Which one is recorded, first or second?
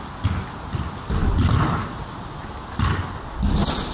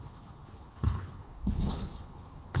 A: first